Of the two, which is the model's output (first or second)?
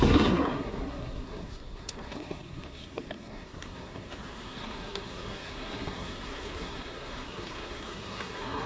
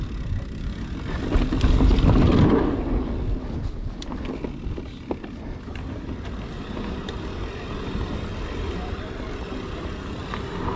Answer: first